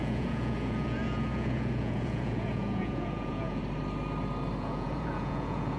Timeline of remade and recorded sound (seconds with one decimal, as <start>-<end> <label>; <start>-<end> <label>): 0.0-3.6 remade; 3.6-4.6 recorded; 4.6-5.8 remade